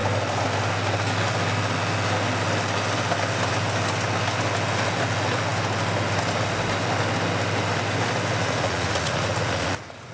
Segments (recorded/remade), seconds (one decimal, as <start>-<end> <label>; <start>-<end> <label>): 0.0-8.4 recorded; 8.4-10.1 remade